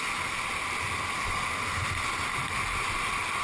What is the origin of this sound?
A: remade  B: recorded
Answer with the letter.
B